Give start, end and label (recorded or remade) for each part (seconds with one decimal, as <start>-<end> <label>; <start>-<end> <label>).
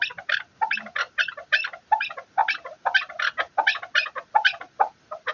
0.0-5.3 recorded